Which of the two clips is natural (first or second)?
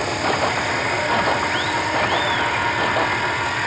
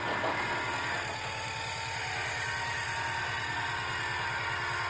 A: second